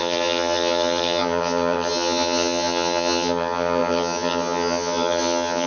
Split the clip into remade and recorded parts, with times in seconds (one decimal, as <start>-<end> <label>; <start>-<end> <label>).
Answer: 0.0-5.7 remade